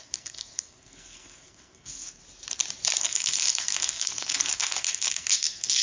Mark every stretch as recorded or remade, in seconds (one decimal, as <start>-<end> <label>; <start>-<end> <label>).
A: 0.0-2.2 remade; 2.2-3.0 recorded; 3.0-5.8 remade